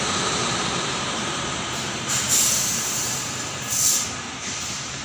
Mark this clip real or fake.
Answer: fake